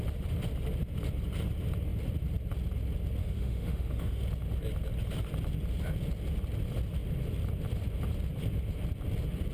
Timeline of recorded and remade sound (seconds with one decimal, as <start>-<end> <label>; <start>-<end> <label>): 0.0-3.2 recorded; 3.2-4.2 remade; 4.2-9.5 recorded

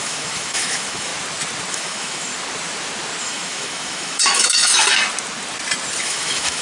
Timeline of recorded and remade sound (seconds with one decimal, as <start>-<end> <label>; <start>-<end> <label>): 0.0-1.1 remade; 1.1-1.7 recorded; 1.7-2.3 remade; 2.3-3.2 recorded; 3.2-4.8 remade; 4.8-6.0 recorded; 6.0-6.6 remade

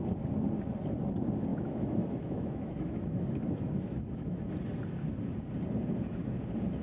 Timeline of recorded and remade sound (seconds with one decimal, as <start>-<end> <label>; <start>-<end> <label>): 0.0-1.5 recorded; 1.5-4.4 remade; 4.4-6.8 recorded